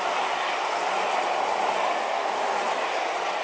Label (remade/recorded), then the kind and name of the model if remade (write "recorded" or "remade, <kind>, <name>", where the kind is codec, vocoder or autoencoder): recorded